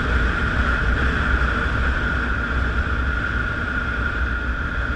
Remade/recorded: recorded